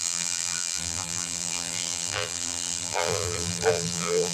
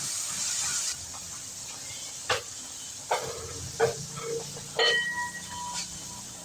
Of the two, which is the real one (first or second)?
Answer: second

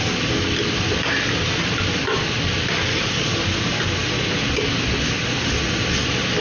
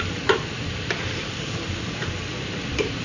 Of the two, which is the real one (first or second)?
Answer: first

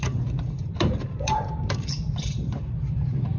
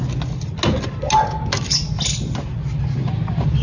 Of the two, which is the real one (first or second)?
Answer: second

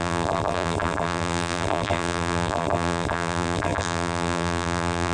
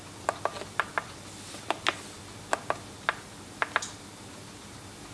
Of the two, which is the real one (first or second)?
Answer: second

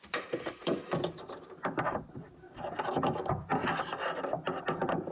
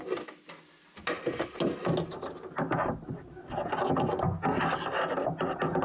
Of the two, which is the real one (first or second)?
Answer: second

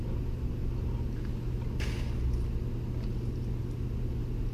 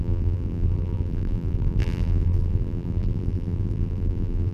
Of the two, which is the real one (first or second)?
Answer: first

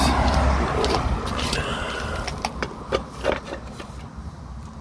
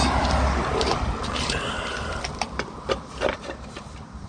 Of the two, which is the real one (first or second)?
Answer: first